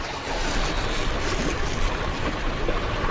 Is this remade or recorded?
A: recorded